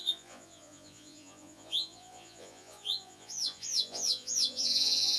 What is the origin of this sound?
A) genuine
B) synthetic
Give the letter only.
B